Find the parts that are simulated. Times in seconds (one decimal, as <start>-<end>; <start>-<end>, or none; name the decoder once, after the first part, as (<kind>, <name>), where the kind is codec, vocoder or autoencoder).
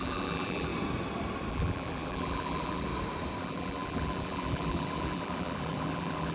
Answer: 0.0-0.7 (vocoder, BigVGAN v2); 1.5-2.9; 3.4-6.3